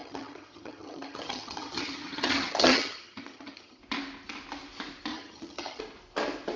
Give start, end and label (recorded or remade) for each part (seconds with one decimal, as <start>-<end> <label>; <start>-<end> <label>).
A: 0.0-3.8 remade; 3.8-5.1 recorded; 5.1-5.8 remade; 5.8-6.6 recorded

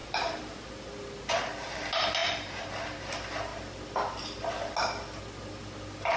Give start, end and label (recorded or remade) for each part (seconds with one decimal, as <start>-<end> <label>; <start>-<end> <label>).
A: 0.0-0.7 remade; 0.7-2.2 recorded; 2.2-2.7 remade; 2.7-6.2 recorded

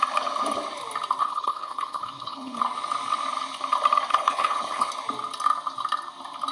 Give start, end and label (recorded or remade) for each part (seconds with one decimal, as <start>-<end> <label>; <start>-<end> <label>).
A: 0.0-1.2 recorded; 1.2-2.6 remade; 2.6-4.1 recorded; 4.1-4.9 remade; 4.9-6.5 recorded

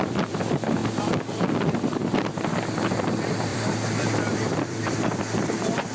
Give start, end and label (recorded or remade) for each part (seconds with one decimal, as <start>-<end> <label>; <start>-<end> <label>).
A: 0.0-0.8 remade; 0.8-3.0 recorded; 3.0-5.9 remade

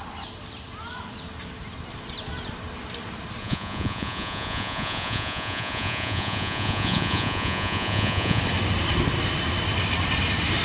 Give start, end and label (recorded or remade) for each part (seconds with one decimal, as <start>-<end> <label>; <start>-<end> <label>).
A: 0.0-3.4 recorded; 3.4-8.4 remade; 8.4-10.6 recorded

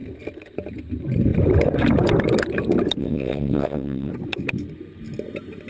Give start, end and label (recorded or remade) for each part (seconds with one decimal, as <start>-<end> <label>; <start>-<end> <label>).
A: 0.0-3.0 recorded; 3.0-4.1 remade; 4.1-5.7 recorded